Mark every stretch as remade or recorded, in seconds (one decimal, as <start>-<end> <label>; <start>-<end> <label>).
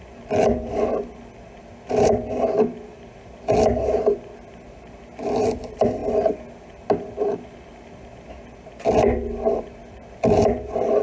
0.0-11.0 recorded